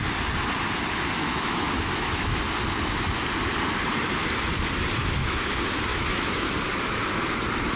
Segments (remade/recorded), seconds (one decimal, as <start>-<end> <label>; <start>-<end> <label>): 0.0-1.2 recorded; 1.2-2.4 remade; 2.4-5.0 recorded; 5.0-5.5 remade; 5.5-5.9 recorded; 5.9-6.5 remade; 6.5-7.8 recorded